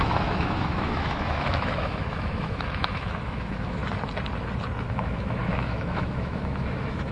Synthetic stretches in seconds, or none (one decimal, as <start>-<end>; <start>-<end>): 0.0-3.8; 4.9-7.1